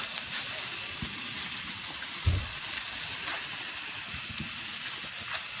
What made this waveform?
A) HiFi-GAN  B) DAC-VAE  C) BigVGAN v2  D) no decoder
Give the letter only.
D